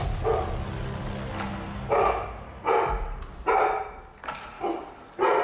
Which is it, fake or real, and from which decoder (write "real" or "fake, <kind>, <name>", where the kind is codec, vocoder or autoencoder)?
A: real